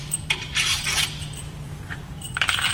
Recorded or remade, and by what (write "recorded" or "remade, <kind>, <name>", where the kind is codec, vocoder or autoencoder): remade, vocoder, BigVGAN v2